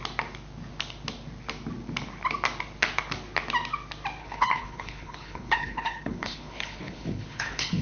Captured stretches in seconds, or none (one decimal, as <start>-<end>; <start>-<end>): 0.0-4.2